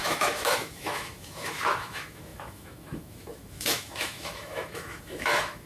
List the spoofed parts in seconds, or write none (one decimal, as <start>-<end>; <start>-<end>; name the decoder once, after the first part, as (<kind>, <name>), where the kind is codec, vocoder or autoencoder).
0.0-5.7 (autoencoder, DAC-VAE)